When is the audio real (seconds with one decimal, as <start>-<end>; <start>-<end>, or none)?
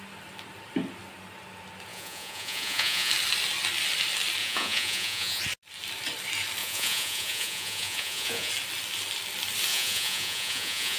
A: 0.0-1.9; 3.1-4.4; 5.4-6.6; 8.5-9.7